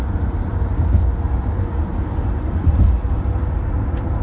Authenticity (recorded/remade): recorded